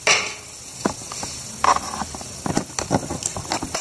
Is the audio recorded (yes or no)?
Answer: yes